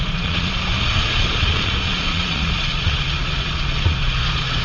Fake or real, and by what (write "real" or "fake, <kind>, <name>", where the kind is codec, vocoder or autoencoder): fake, vocoder, Vocos